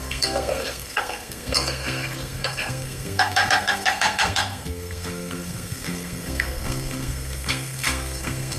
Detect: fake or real fake